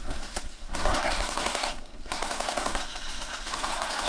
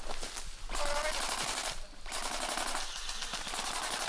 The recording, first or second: second